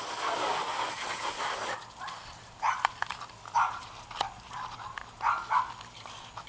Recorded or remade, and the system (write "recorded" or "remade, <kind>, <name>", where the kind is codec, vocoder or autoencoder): recorded